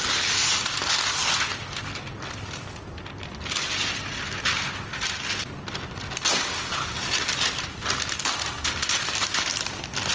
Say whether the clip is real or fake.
real